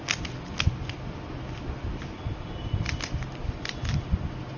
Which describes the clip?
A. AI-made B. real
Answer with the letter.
B